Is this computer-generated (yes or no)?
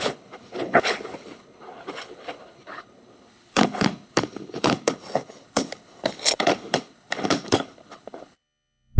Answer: yes